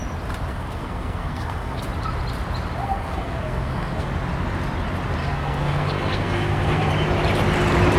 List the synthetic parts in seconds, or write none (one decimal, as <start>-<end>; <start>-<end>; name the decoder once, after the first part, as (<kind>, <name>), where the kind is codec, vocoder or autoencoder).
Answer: 0.5-1.8 (codec, SNAC); 2.8-4.1; 5.2-6.9